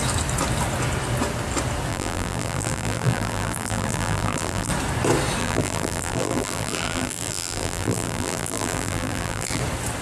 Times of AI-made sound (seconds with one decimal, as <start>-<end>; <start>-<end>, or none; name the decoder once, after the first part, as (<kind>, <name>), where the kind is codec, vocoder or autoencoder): 1.9-4.7 (vocoder, BigVGAN v2); 5.4-9.6